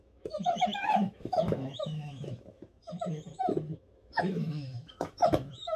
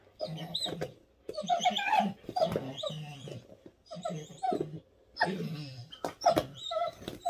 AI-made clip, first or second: first